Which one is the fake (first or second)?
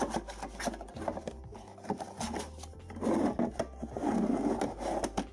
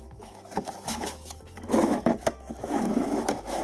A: second